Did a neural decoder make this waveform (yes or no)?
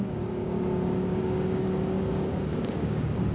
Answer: yes